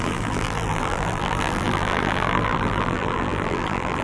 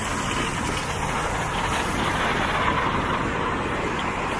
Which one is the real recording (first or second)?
second